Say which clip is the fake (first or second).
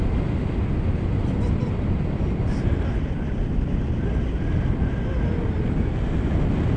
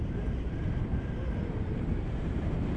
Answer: second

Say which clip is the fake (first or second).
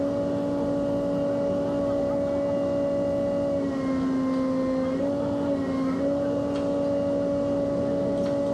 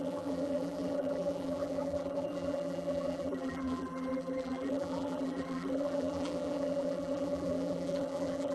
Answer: second